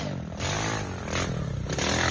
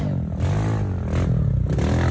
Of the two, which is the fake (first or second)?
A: first